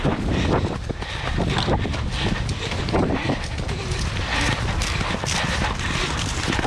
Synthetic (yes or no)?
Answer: yes